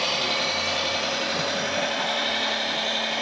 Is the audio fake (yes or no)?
no